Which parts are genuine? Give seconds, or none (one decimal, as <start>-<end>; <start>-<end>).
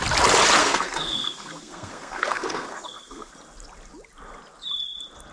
0.0-0.6; 3.3-5.3